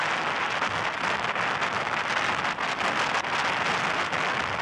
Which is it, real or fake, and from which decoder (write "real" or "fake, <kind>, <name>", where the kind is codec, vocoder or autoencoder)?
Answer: real